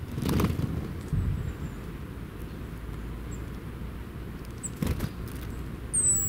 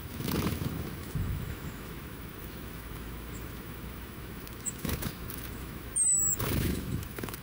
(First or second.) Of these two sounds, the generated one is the second